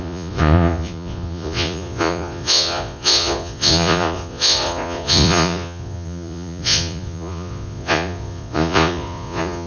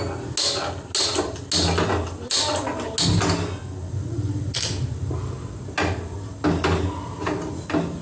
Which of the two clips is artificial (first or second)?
first